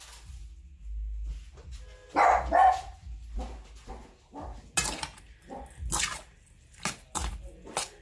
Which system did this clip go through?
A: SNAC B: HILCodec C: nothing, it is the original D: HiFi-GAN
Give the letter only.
C